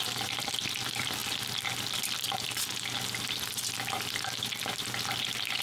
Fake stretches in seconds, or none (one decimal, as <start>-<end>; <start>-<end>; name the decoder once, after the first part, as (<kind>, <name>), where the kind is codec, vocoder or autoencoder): none